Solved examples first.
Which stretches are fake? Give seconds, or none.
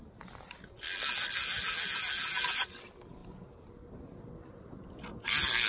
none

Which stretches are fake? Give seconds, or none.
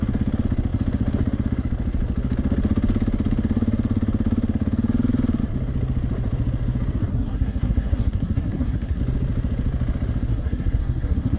7.1-9.0 (codec, SNAC); 10.3-11.4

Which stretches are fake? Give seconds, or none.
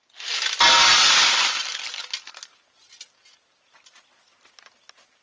none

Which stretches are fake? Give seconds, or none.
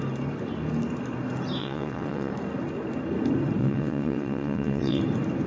1.6-2.3 (vocoder, WaveNeXt); 3.6-5.0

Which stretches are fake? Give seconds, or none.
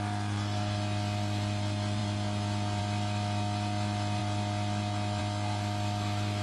none